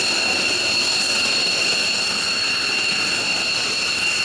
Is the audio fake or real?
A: real